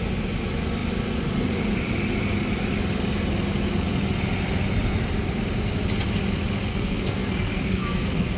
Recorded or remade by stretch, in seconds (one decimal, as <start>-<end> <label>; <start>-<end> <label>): 0.0-6.7 recorded; 6.7-8.4 remade